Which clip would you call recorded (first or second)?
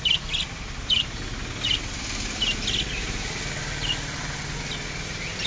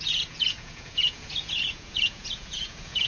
first